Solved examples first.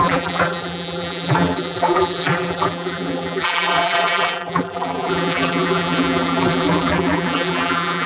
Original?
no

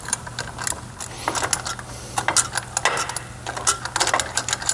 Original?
yes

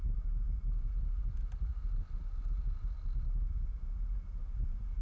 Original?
yes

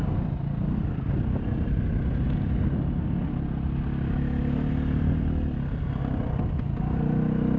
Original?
yes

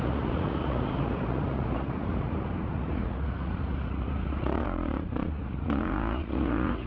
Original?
no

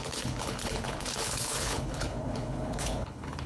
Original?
no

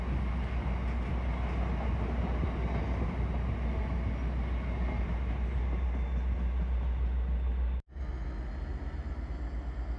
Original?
yes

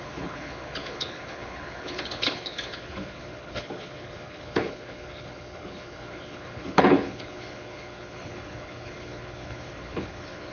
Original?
no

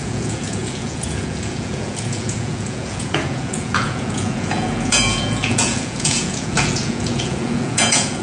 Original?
no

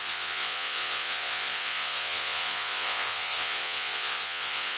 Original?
no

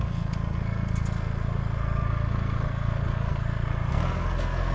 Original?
no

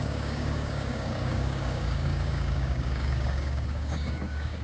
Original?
no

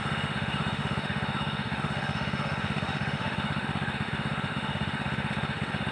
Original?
no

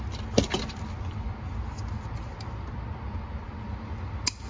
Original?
yes